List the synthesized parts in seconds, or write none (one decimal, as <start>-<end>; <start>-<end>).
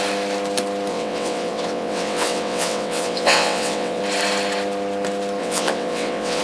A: 0.9-4.0; 5.4-6.4